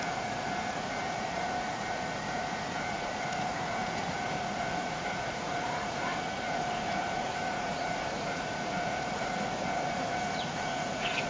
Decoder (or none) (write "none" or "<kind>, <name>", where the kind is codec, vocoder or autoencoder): vocoder, Vocos